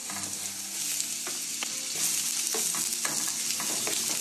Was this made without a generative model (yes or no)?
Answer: yes